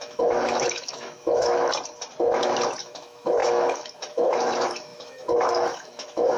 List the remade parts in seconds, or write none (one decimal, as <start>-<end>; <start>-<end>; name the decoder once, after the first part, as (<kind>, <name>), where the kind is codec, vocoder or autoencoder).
0.0-1.7 (autoencoder, DAC-VAE); 2.8-6.4